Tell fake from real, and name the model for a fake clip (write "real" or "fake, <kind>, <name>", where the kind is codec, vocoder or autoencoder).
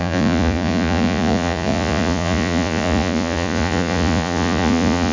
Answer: fake, vocoder, Vocos